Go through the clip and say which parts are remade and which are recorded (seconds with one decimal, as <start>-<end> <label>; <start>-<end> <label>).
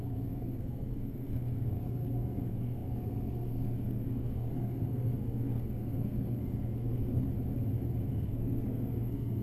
0.0-7.3 remade; 7.3-8.1 recorded; 8.1-9.4 remade